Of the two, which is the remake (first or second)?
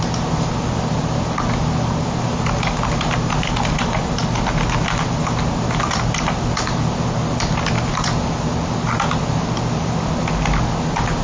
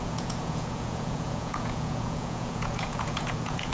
second